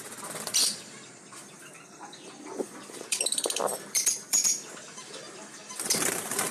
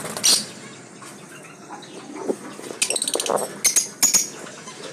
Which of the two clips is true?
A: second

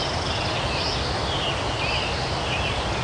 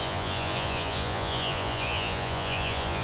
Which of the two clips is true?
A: first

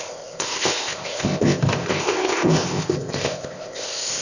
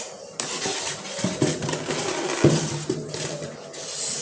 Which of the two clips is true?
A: second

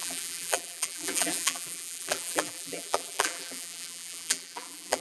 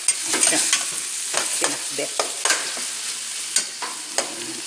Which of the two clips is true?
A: second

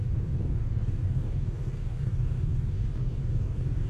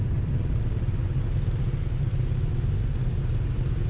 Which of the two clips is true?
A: second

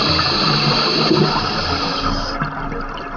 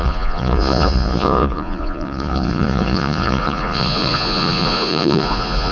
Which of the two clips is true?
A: first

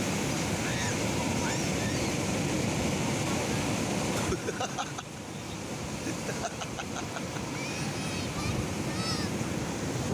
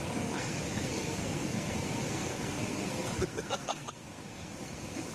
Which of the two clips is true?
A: first